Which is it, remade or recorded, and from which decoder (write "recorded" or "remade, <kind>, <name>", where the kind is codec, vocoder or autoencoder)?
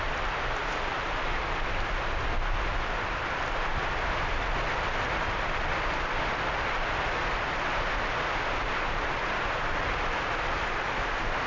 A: recorded